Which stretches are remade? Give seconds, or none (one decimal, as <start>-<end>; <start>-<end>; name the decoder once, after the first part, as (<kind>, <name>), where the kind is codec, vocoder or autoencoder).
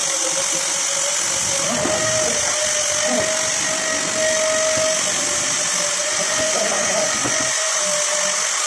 6.0-7.8 (vocoder, Vocos)